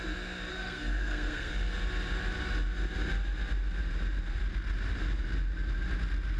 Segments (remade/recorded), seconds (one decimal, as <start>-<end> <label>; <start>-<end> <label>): 0.0-0.5 recorded; 0.5-1.5 remade; 1.5-6.4 recorded